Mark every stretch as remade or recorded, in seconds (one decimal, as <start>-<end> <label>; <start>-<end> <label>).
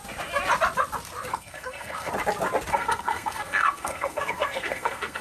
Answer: 0.0-1.3 recorded; 1.3-2.1 remade; 2.1-2.7 recorded; 2.7-5.2 remade